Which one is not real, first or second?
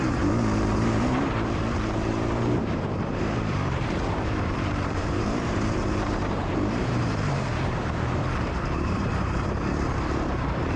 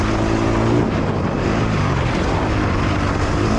first